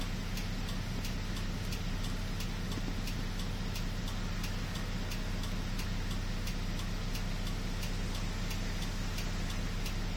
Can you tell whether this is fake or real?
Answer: real